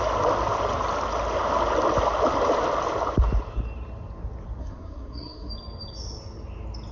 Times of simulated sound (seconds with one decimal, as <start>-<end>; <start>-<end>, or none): 4.6-5.5